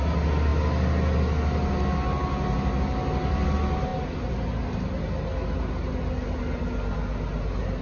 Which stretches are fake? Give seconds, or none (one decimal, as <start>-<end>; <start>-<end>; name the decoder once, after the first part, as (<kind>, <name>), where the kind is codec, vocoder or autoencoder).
none